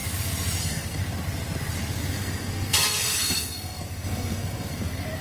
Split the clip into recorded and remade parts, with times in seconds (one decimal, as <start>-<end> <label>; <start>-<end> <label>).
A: 0.0-0.6 recorded; 0.6-1.0 remade; 1.0-2.1 recorded; 2.1-5.2 remade